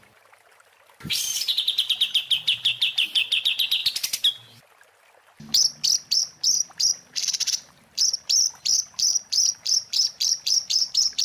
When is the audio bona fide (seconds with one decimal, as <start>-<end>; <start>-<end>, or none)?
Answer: 3.8-6.1